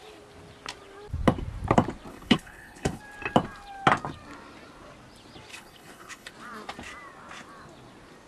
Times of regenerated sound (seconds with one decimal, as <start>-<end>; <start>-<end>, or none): 2.1-3.0; 5.5-6.3

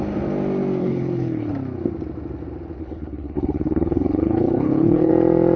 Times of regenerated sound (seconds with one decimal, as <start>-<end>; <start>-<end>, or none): 0.8-1.5; 2.8-5.1